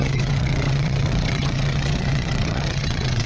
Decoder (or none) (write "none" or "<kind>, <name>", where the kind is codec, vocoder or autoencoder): vocoder, WaveNeXt